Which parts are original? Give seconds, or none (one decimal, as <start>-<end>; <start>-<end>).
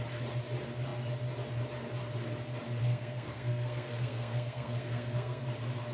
0.0-2.8; 5.4-5.9